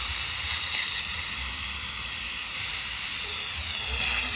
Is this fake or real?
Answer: fake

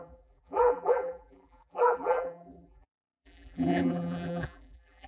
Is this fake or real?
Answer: fake